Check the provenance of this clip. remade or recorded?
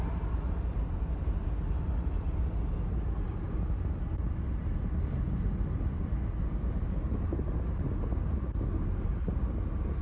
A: recorded